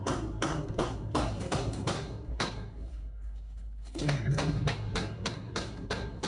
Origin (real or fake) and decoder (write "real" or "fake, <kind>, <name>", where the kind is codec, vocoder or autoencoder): fake, codec, SNAC